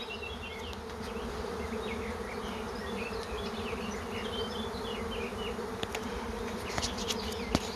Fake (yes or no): no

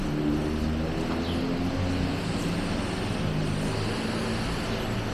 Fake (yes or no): no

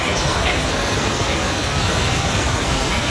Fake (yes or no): yes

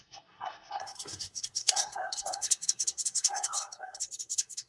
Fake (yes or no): yes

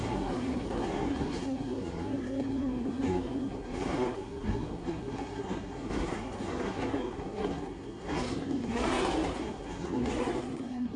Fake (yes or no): yes